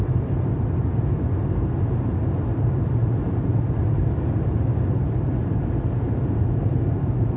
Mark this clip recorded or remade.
recorded